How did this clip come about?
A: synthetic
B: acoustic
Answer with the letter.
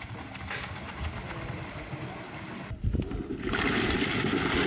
B